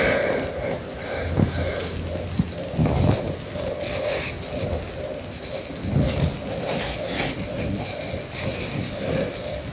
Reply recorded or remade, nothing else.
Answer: recorded